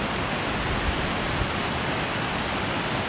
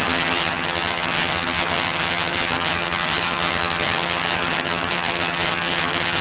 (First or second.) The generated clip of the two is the second